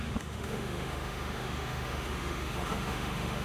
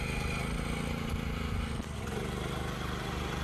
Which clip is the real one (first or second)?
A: second